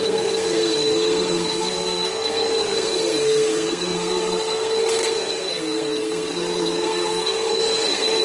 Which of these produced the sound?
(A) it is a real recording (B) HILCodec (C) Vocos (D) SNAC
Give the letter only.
D